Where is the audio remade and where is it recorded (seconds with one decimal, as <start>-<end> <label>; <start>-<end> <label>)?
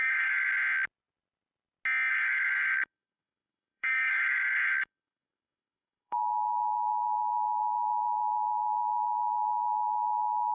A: 0.0-0.5 remade; 0.5-2.1 recorded; 2.1-10.5 remade